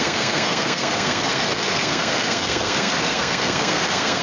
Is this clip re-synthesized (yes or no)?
yes